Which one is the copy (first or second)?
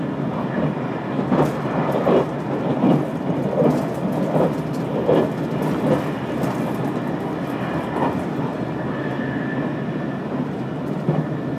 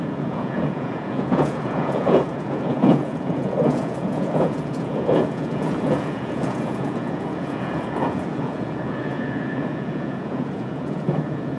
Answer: second